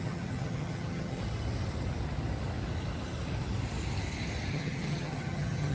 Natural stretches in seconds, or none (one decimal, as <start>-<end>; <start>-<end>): 1.2-4.5